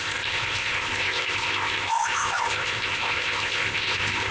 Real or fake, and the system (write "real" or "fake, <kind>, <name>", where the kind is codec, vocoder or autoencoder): fake, codec, ZipCodec